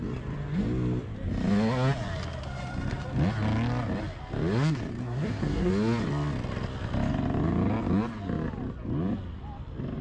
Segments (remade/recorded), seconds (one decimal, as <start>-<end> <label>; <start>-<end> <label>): 0.0-5.0 recorded; 5.0-5.7 remade; 5.7-10.0 recorded